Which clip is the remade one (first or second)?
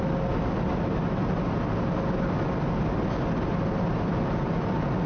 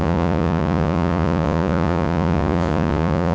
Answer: second